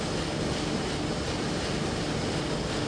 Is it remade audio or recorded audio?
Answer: recorded